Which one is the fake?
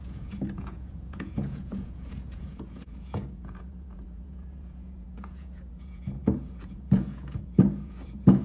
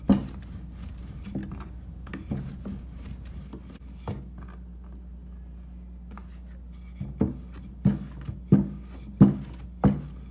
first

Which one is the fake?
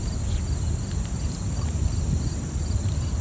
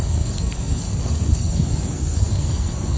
second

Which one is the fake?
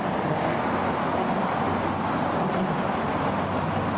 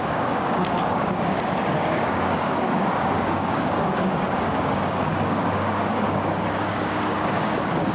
second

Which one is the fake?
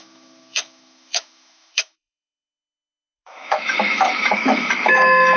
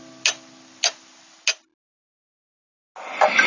first